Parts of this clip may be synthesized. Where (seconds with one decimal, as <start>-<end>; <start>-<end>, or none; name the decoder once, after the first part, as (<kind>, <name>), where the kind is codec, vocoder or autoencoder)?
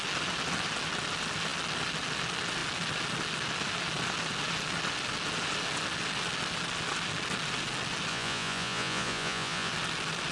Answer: 8.1-9.7 (vocoder, Vocos)